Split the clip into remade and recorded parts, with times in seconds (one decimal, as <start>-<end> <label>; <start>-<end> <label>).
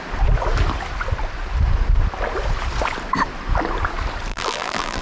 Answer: 0.0-4.3 recorded; 4.3-5.0 remade